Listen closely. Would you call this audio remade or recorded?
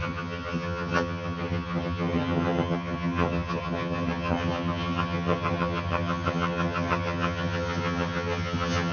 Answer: remade